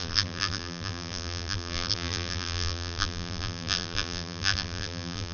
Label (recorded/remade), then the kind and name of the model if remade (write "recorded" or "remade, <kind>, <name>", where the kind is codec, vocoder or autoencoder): remade, vocoder, BigVGAN v2